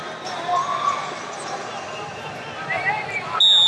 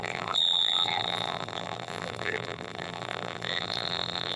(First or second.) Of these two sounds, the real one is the first